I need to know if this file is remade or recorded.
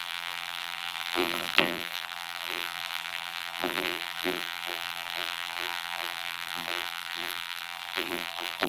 remade